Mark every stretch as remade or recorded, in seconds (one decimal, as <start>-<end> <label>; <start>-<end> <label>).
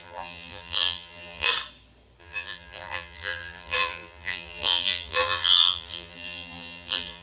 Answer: 0.0-1.5 remade; 1.5-2.2 recorded; 2.2-7.2 remade